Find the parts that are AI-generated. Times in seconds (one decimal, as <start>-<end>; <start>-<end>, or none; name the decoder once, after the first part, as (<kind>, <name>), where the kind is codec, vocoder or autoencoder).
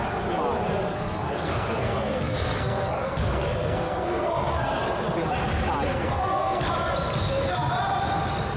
0.9-4.8 (codec, SNAC); 5.9-6.7